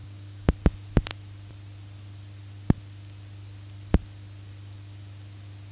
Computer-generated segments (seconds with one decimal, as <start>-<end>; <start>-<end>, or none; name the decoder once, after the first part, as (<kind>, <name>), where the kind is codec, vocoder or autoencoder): 0.0-0.5 (codec, DAC)